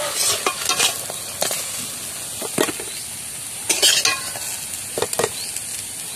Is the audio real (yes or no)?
yes